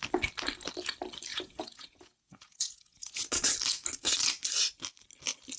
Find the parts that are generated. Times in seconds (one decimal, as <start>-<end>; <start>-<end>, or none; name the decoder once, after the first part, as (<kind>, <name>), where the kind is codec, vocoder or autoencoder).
1.3-3.3 (vocoder, Vocos)